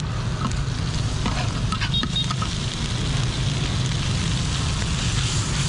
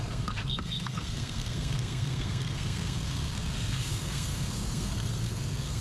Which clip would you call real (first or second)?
first